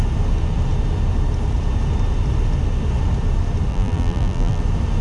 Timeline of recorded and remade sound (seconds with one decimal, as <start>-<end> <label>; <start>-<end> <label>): 0.0-3.7 recorded; 3.7-4.6 remade; 4.6-5.0 recorded